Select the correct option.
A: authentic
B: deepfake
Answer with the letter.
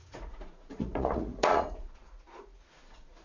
B